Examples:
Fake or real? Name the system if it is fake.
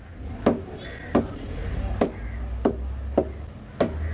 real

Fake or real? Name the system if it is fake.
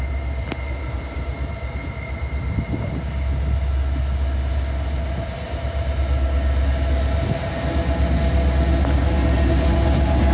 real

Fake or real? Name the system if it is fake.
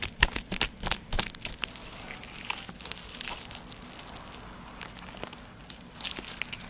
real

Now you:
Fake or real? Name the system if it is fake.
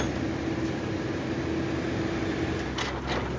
real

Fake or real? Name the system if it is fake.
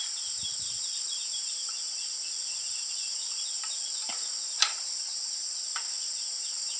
real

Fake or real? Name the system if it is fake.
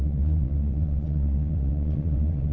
fake, vocoder, WaveNeXt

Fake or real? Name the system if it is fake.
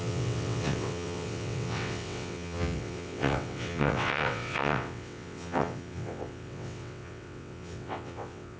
fake, vocoder, WaveNeXt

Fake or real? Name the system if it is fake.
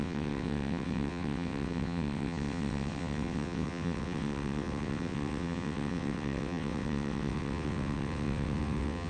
fake, vocoder, WaveNeXt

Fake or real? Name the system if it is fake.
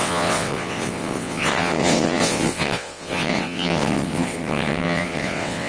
fake, vocoder, WaveNeXt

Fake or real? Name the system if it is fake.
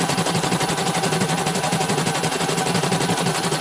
real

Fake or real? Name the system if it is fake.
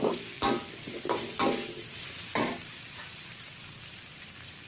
real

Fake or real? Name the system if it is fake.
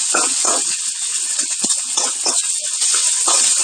fake, vocoder, WaveNeXt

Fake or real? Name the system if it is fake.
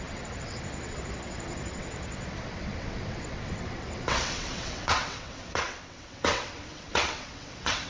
fake, vocoder, WaveNeXt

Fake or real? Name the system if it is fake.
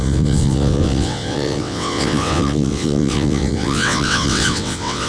fake, vocoder, WaveNeXt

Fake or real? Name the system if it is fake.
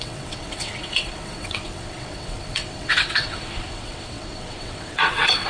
fake, vocoder, WaveNeXt